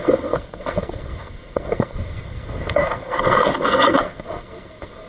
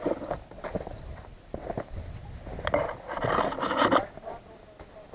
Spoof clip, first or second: first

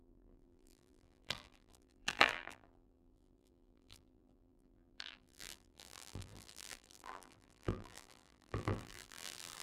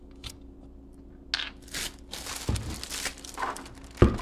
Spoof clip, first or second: first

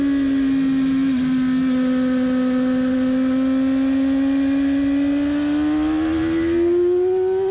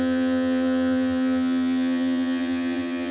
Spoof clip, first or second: second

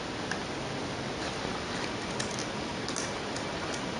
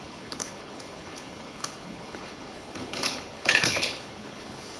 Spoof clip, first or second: second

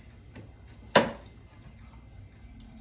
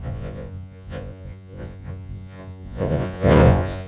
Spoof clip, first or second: second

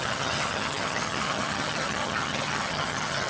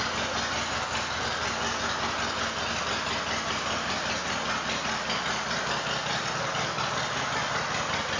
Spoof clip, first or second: first